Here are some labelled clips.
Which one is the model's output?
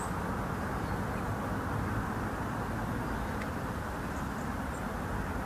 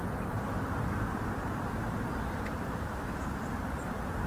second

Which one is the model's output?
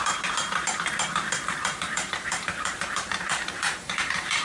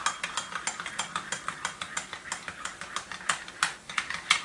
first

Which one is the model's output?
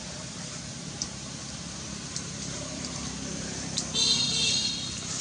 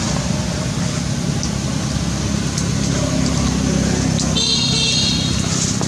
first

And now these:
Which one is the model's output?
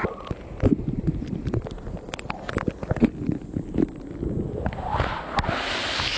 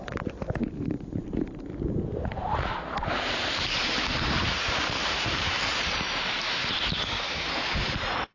second